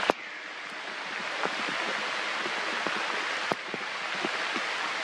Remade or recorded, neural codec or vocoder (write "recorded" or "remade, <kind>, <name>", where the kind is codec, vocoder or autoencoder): recorded